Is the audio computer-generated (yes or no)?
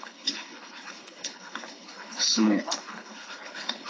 yes